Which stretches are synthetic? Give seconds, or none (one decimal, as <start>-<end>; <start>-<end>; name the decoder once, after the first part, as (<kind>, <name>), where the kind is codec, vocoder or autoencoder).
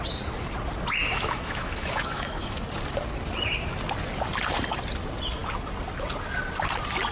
1.0-2.6 (autoencoder, DAC-VAE)